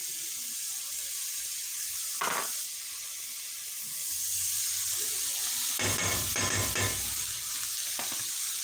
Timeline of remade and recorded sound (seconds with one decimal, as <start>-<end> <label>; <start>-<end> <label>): 0.0-1.8 remade; 1.8-4.0 recorded; 4.0-6.5 remade; 6.5-8.6 recorded